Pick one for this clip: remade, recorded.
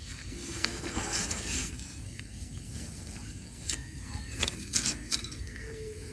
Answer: remade